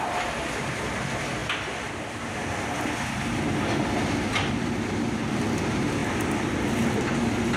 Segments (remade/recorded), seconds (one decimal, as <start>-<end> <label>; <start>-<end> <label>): 0.0-7.6 recorded